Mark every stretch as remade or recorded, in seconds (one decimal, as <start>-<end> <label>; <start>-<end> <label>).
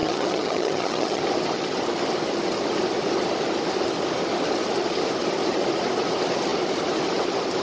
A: 0.0-1.2 remade; 1.2-7.6 recorded